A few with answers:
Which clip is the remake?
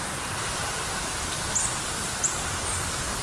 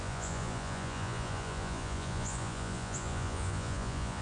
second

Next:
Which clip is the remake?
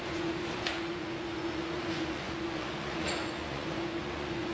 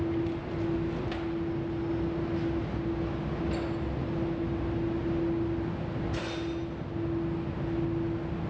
first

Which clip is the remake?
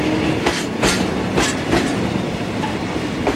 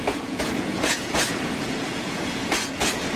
second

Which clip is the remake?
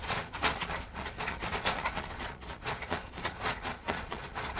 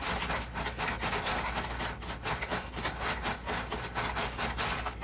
first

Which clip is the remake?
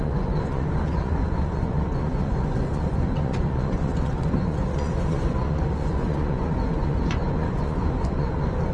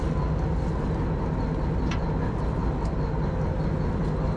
first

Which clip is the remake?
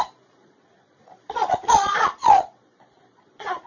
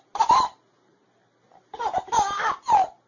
first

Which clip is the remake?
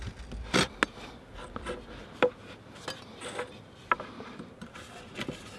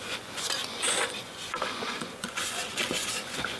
second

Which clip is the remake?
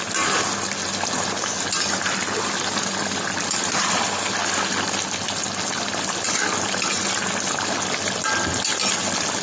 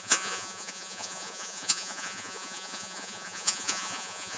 second